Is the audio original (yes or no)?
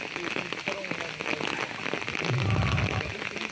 yes